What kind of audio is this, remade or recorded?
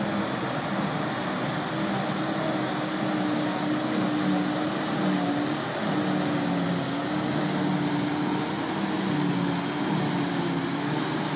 recorded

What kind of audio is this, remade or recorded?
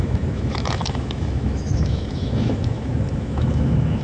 remade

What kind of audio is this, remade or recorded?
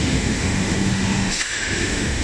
remade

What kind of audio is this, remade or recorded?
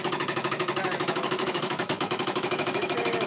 remade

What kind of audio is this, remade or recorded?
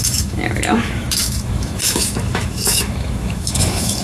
remade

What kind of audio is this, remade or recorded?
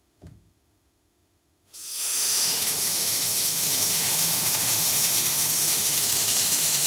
remade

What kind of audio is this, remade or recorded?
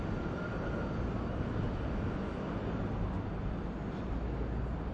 recorded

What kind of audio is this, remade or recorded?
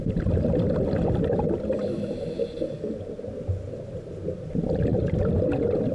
recorded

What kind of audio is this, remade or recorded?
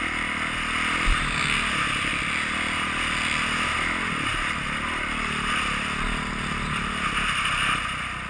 recorded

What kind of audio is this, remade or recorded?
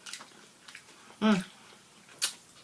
recorded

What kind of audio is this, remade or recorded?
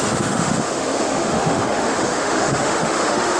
remade